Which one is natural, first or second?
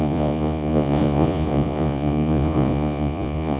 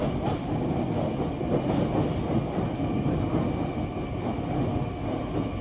second